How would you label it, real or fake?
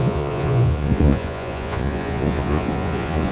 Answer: fake